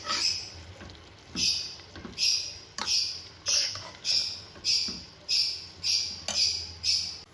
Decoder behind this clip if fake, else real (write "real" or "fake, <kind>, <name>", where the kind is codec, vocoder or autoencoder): real